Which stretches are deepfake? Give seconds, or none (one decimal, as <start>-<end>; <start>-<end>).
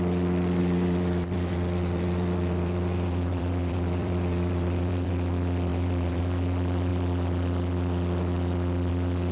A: 0.6-5.1; 5.7-6.2